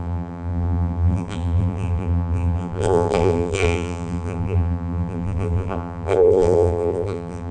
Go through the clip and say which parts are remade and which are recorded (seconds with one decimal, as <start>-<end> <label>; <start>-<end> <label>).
0.0-7.5 remade